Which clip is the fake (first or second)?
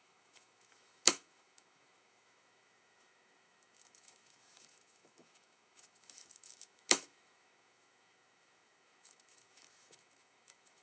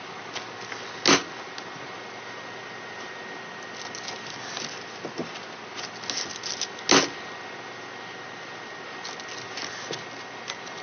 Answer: first